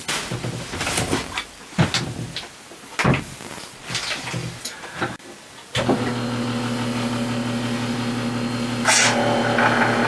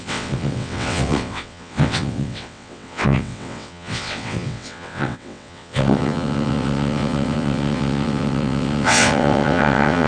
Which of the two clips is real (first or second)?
first